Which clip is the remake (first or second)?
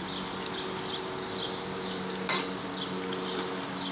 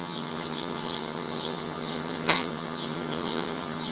second